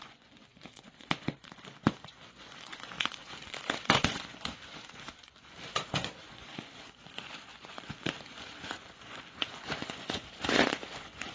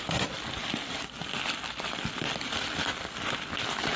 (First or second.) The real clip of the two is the second